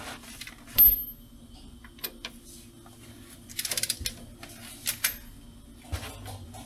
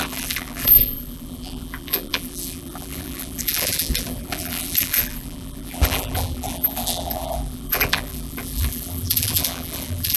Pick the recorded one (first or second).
first